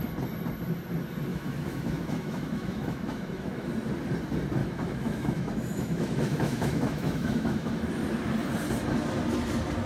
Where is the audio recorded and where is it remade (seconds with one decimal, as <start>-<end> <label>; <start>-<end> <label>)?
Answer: 0.0-1.3 recorded; 1.3-3.7 remade; 3.7-4.6 recorded; 4.6-7.7 remade; 7.7-9.9 recorded